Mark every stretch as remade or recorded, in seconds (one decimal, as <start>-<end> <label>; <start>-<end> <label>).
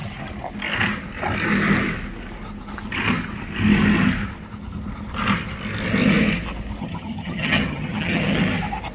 0.0-6.8 recorded; 6.8-8.4 remade; 8.4-8.9 recorded